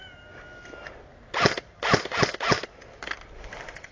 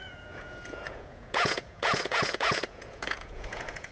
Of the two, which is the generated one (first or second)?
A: second